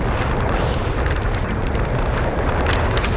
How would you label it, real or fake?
real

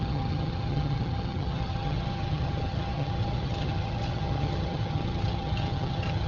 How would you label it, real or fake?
fake